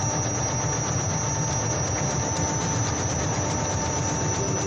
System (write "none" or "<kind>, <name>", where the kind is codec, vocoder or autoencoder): none